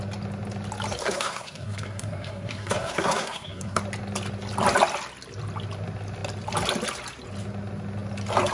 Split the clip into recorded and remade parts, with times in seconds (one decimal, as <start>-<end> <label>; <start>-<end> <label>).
0.0-1.0 recorded; 1.0-3.8 remade; 3.8-8.5 recorded